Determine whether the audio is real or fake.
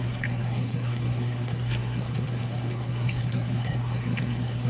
fake